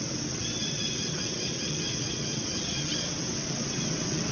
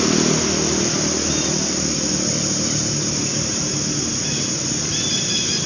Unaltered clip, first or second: second